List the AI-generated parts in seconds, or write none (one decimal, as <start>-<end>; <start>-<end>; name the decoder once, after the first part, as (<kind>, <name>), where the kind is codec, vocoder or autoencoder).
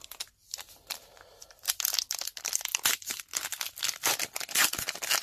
0.4-2.1 (vocoder, BigVGAN v2)